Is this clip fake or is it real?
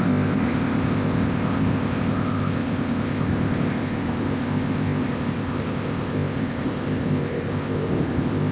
fake